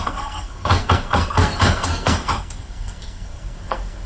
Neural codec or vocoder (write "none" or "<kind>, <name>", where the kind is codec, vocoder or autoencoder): codec, SNAC